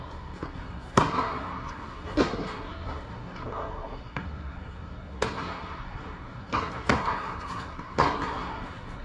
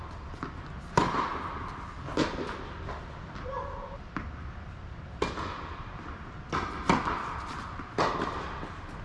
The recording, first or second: second